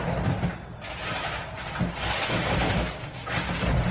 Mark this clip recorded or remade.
remade